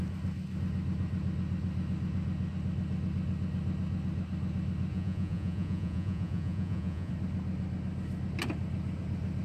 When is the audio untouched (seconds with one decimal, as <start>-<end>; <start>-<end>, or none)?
0.0-4.9; 7.1-9.4